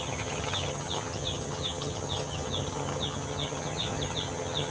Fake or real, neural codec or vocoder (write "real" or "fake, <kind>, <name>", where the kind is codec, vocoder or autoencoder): fake, vocoder, HiFi-GAN